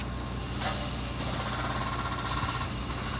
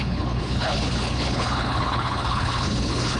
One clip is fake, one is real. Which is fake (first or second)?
second